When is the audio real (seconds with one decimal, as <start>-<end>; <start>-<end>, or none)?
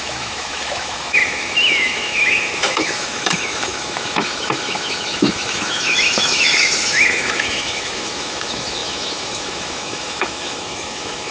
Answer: none